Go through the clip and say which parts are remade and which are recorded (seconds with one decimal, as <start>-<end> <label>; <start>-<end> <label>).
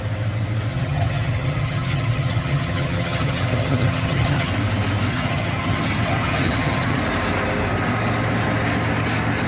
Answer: 0.0-0.7 recorded; 0.7-4.5 remade; 4.5-5.1 recorded; 5.1-7.0 remade; 7.0-9.5 recorded